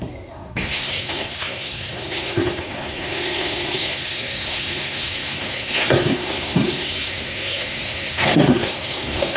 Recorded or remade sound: remade